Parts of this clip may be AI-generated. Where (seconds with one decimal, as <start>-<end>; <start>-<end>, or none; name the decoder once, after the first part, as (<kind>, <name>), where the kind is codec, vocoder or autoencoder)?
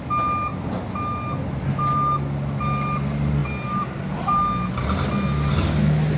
none